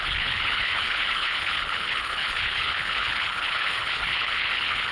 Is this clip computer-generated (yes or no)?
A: yes